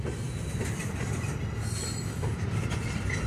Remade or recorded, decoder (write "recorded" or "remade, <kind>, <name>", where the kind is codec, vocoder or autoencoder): recorded